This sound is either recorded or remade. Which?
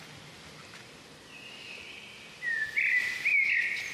recorded